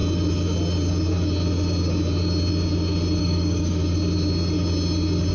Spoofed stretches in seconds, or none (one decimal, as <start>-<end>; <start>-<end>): 3.2-3.8